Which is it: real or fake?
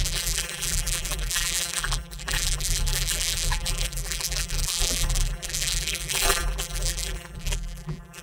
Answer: fake